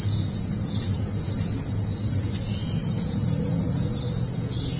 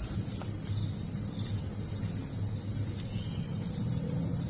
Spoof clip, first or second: first